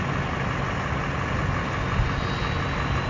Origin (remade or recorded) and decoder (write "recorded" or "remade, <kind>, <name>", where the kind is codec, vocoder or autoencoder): recorded